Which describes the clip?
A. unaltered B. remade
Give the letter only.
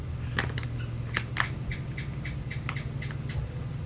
A